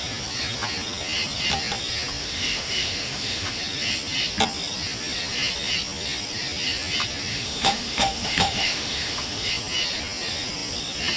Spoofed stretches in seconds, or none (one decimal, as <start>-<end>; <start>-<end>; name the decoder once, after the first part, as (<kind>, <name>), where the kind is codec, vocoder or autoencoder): 2.2-3.6 (autoencoder, DAC-VAE); 7.3-9.5